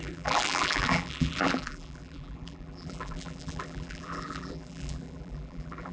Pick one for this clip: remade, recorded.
remade